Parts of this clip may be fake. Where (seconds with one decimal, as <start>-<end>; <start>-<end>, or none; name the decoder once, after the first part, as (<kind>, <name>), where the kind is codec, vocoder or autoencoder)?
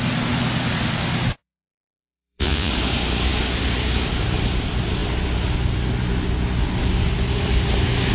1.4-2.7 (vocoder, Vocos)